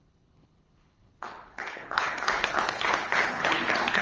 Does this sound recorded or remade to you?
remade